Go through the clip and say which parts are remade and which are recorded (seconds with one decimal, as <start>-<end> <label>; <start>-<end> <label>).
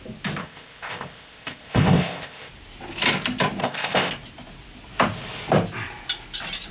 0.0-0.4 recorded; 0.4-2.5 remade; 2.5-3.6 recorded; 3.6-4.1 remade; 4.1-6.7 recorded